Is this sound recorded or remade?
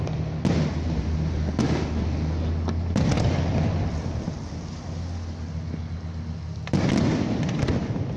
recorded